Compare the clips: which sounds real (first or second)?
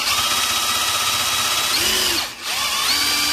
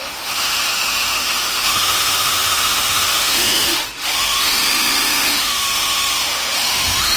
first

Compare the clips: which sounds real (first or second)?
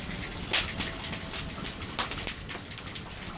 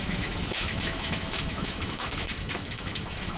first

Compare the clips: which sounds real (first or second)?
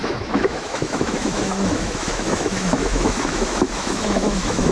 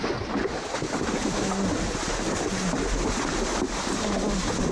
second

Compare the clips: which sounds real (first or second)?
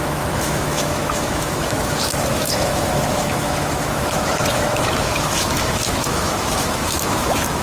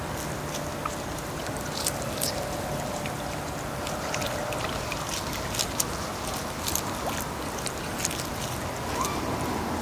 second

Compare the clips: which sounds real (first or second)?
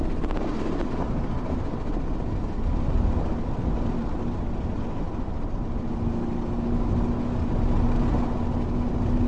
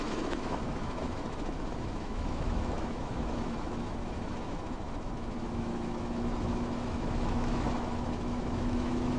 first